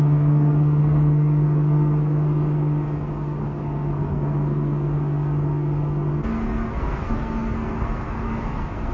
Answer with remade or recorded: remade